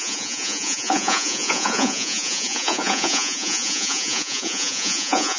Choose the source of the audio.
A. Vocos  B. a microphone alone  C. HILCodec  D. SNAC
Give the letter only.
A